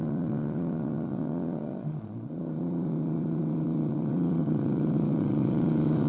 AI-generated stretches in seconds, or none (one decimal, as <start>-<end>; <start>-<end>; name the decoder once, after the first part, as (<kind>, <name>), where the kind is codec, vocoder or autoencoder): 0.0-6.1 (vocoder, Vocos)